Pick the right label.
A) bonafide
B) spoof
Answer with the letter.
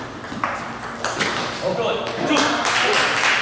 A